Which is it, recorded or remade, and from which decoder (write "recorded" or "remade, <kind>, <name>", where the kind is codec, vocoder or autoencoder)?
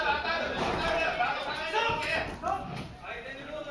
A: recorded